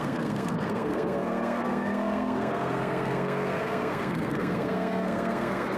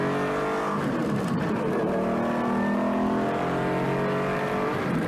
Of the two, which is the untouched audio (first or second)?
second